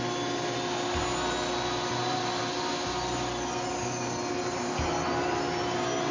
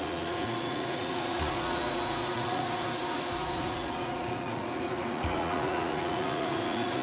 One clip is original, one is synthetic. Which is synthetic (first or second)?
second